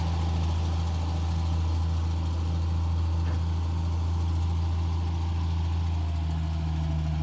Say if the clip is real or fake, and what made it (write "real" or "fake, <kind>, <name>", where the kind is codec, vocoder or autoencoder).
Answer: real